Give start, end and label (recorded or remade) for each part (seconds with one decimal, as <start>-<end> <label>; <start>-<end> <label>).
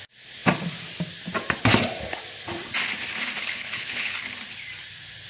0.0-3.4 recorded; 3.4-4.2 remade; 4.2-5.3 recorded